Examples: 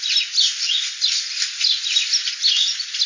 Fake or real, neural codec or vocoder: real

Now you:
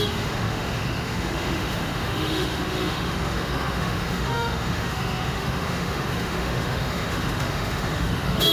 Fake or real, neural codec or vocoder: fake, autoencoder, DAC-VAE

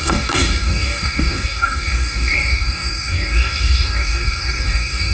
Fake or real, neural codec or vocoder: fake, codec, DAC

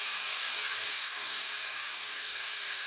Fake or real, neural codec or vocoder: fake, codec, DAC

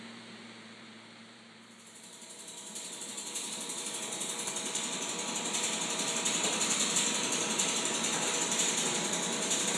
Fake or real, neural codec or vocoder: fake, vocoder, BigVGAN v2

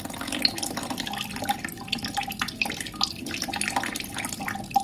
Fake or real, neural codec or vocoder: real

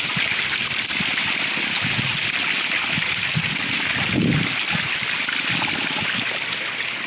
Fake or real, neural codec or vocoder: real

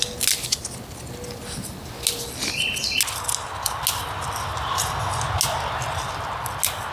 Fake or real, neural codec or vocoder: real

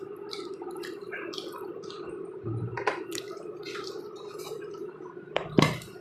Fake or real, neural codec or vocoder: fake, vocoder, BigVGAN v2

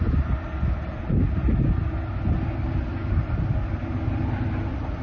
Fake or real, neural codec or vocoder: real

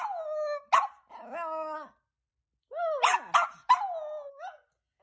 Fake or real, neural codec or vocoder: real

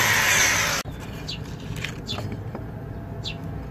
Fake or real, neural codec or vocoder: real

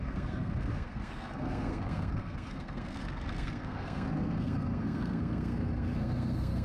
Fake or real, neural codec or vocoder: fake, codec, SNAC